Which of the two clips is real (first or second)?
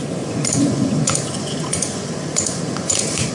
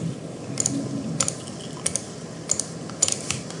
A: second